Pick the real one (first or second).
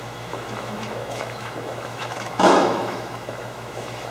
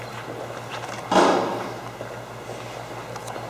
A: second